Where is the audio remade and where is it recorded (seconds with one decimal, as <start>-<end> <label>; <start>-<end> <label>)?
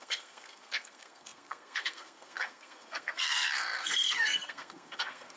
0.0-5.4 remade